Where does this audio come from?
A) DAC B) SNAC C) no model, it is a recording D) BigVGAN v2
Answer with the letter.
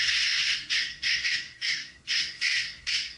B